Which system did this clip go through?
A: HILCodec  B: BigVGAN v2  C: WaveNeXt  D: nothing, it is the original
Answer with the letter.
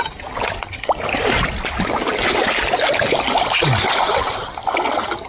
D